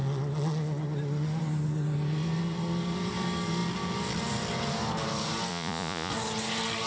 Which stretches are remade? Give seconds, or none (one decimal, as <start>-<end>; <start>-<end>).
5.5-6.1